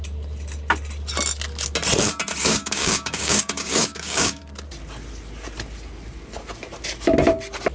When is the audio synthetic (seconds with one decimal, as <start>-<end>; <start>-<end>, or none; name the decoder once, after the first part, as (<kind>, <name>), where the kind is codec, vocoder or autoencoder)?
2.4-4.4 (codec, DAC)